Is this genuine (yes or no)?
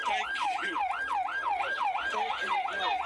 yes